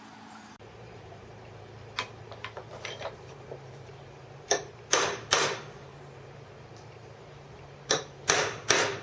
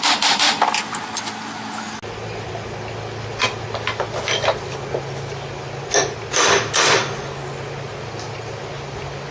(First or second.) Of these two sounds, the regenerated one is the first